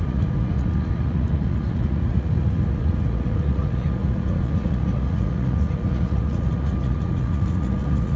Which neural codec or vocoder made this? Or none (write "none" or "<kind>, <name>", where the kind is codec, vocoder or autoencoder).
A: vocoder, Vocos